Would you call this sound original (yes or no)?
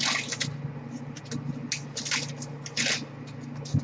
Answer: yes